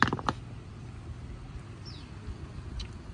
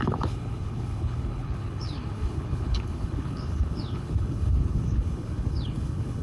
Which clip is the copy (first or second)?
second